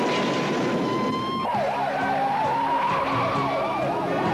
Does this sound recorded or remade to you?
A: recorded